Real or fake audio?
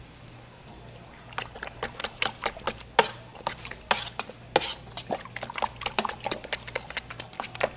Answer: real